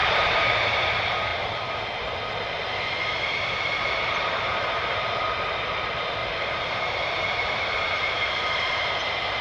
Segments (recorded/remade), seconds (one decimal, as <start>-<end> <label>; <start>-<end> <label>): 0.0-0.9 remade; 0.9-6.2 recorded; 6.2-8.9 remade; 8.9-9.4 recorded